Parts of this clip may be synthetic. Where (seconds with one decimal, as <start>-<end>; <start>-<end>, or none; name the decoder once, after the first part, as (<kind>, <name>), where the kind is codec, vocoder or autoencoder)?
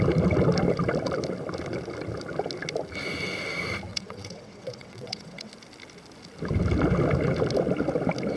3.9-5.5 (vocoder, WaveNeXt)